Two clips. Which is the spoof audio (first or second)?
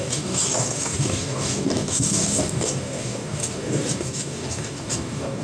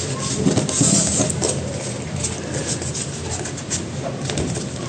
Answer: first